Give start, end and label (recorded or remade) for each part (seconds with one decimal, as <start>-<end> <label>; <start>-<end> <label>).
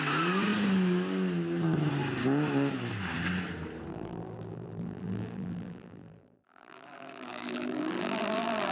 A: 0.0-3.9 recorded; 3.9-8.7 remade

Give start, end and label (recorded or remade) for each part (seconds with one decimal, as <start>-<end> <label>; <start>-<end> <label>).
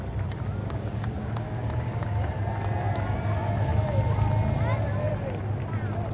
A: 0.0-0.6 recorded; 0.6-2.3 remade; 2.3-6.1 recorded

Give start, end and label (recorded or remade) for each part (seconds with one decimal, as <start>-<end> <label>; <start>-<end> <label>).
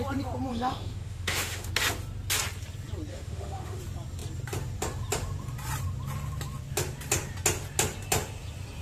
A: 0.0-0.5 recorded; 0.5-1.7 remade; 1.7-3.1 recorded; 3.1-3.8 remade; 3.8-8.8 recorded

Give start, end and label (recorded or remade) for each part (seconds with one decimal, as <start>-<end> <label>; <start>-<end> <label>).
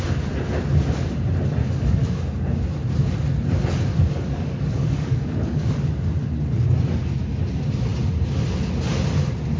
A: 0.0-1.6 recorded; 1.6-2.2 remade; 2.2-3.9 recorded; 3.9-6.1 remade; 6.1-9.6 recorded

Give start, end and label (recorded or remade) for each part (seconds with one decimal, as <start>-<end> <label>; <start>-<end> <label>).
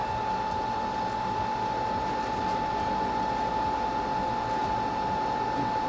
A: 0.0-5.9 recorded